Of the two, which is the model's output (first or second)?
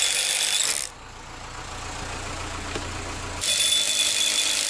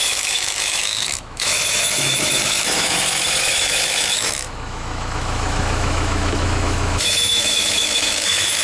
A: second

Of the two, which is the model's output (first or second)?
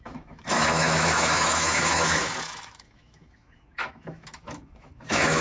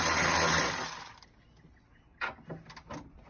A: first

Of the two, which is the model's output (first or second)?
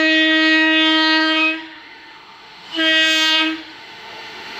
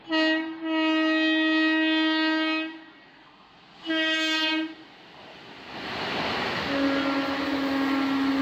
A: first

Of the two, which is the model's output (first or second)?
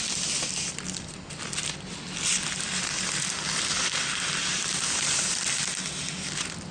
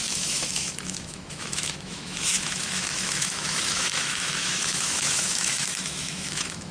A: second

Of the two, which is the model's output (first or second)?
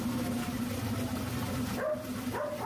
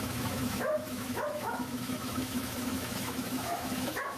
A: second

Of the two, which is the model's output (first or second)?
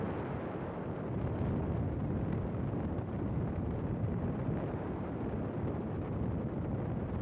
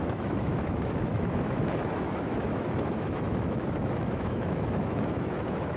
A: second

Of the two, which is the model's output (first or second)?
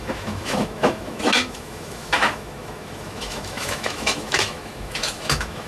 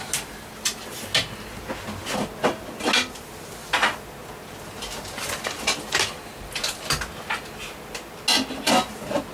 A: first